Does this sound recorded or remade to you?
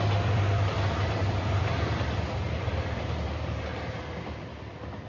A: remade